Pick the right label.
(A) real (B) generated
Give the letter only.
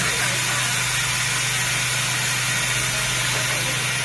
A